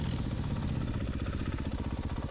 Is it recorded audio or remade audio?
recorded